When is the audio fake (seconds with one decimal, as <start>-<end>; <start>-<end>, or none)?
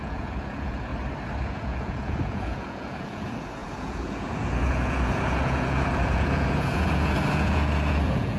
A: 0.0-0.9; 1.4-8.4